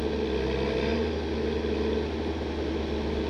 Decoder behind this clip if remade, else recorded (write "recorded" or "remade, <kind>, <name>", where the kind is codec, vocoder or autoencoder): recorded